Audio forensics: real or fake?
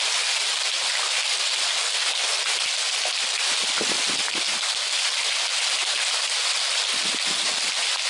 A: real